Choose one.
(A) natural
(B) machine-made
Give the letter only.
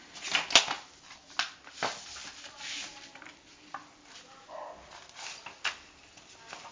A